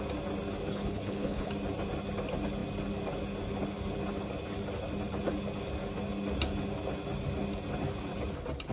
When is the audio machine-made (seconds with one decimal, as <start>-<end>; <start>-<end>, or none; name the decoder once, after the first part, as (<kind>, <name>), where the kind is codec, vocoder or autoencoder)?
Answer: 0.7-1.5 (codec, HILCodec)